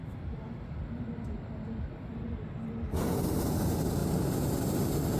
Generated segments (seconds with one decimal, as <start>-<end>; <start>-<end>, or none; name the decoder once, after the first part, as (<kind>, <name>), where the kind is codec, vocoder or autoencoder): none